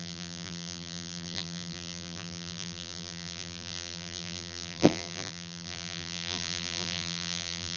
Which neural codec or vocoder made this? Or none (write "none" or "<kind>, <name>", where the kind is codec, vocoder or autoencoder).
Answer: vocoder, BigVGAN v2